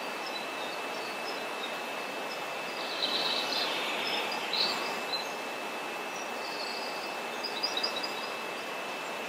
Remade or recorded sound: recorded